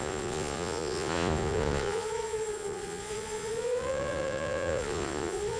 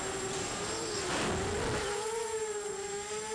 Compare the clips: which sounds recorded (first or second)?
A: second